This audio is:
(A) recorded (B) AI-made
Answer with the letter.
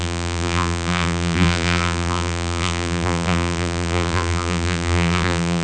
B